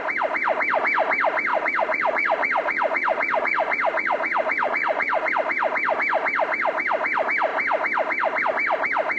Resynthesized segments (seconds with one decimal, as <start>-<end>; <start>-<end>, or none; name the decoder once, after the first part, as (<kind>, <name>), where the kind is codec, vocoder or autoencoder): 1.5-5.3 (vocoder, Vocos)